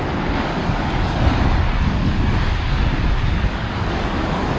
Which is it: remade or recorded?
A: remade